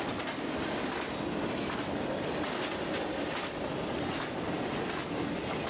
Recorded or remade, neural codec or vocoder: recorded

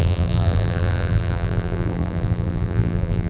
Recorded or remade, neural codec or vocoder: remade, vocoder, BigVGAN v2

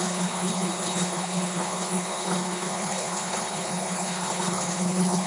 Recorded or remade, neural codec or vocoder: remade, codec, HILCodec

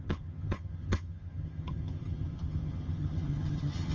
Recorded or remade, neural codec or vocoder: remade, vocoder, HiFi-GAN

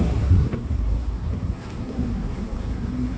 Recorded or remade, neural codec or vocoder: remade, codec, SNAC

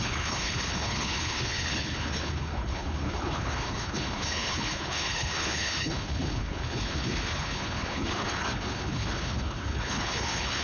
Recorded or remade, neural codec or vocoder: remade, codec, HILCodec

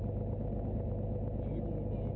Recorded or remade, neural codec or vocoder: recorded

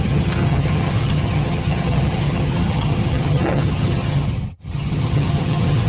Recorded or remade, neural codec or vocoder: remade, vocoder, HiFi-GAN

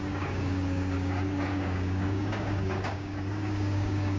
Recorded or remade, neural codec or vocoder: remade, codec, DAC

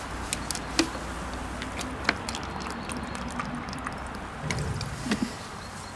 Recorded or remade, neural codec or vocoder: recorded